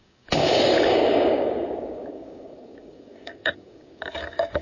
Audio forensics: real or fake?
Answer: fake